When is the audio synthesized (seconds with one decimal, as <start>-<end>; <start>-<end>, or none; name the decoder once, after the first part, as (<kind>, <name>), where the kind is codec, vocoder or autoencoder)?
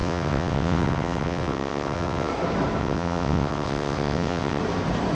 0.0-2.3 (vocoder, WaveNeXt); 2.8-4.6